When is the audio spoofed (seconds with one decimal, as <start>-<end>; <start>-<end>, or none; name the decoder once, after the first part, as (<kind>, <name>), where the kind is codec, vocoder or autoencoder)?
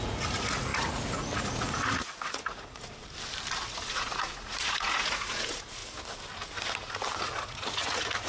0.0-3.0 (vocoder, Vocos); 3.6-5.8; 7.2-8.3